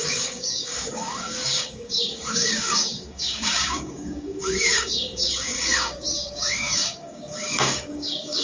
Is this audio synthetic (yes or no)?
yes